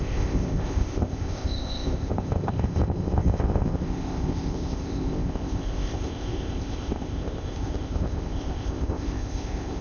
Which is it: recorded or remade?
remade